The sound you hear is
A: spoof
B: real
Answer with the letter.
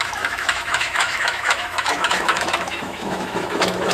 A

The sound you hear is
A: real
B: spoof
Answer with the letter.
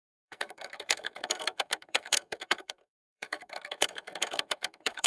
B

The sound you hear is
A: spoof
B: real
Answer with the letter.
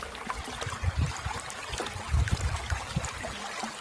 B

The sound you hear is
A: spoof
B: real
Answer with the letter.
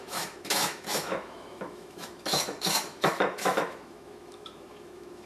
A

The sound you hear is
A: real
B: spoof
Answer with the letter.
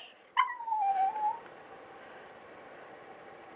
A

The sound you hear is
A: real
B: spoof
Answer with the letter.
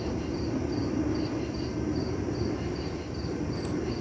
A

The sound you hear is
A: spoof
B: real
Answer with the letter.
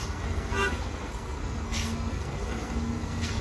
A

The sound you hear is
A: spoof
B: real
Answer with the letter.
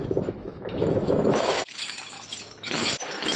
A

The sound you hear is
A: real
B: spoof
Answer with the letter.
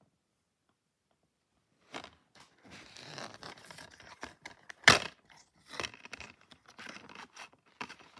A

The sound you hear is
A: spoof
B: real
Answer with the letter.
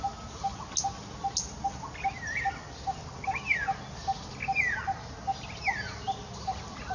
B